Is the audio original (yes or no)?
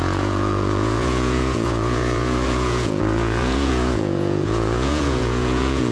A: no